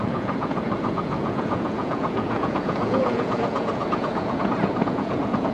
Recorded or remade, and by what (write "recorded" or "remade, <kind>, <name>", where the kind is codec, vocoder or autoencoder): remade, vocoder, Vocos